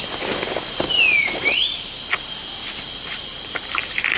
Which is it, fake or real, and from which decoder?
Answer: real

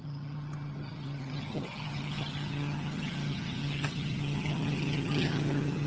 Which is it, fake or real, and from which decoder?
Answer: fake, vocoder, HiFi-GAN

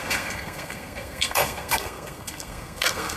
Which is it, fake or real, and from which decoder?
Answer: fake, codec, SNAC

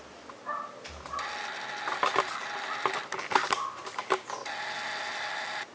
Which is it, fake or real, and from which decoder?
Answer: real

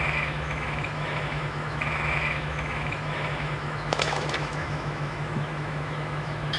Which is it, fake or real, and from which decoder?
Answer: fake, autoencoder, DAC-VAE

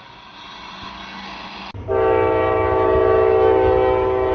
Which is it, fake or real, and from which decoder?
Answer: real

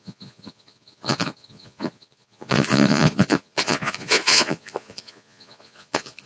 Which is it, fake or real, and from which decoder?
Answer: fake, vocoder, Vocos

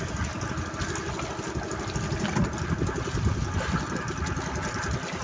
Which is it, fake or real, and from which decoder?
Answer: real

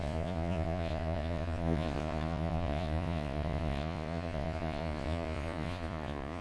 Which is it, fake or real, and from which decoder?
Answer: fake, vocoder, Vocos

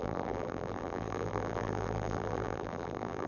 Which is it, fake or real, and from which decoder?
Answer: fake, vocoder, BigVGAN v2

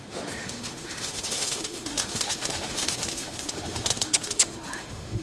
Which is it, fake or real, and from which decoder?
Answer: fake, autoencoder, DAC-VAE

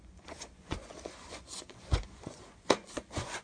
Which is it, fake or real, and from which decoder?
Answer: fake, vocoder, Vocos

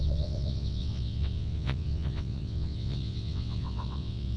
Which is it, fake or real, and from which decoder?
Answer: fake, vocoder, WaveNeXt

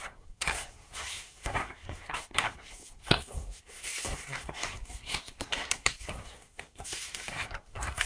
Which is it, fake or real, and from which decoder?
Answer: fake, codec, SNAC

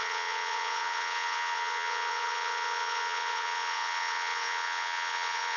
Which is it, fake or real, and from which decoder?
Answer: fake, vocoder, WaveNeXt